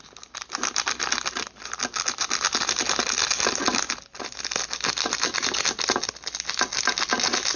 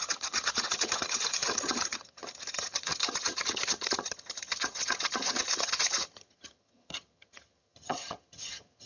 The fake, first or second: second